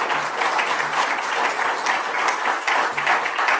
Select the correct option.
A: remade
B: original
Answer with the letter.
B